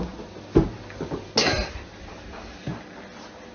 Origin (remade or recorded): recorded